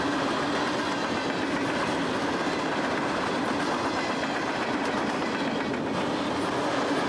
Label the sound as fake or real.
real